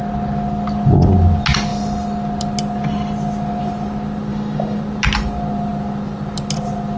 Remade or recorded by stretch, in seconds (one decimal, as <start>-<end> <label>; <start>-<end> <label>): 0.0-4.3 recorded; 4.3-4.8 remade; 4.8-7.0 recorded

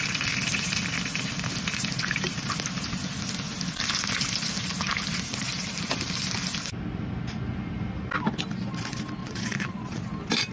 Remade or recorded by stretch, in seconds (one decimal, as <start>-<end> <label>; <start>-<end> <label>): 0.0-9.2 recorded; 9.2-10.0 remade; 10.0-10.5 recorded